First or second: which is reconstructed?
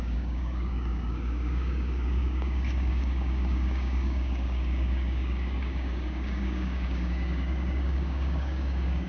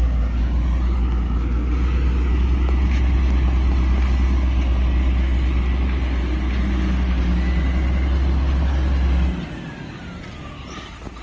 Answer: first